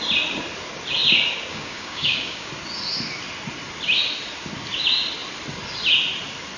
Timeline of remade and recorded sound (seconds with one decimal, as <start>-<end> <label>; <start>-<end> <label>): 0.0-1.5 recorded; 1.5-2.5 remade; 2.5-6.6 recorded